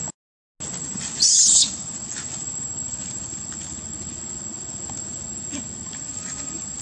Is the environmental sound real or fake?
real